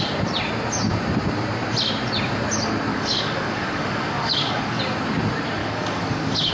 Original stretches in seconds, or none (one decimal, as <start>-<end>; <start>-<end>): 0.0-2.9; 4.8-5.6